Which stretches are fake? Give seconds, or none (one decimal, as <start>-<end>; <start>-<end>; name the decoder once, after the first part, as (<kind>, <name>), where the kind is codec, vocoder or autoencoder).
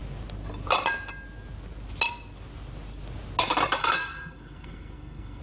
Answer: 3.8-5.4 (codec, SNAC)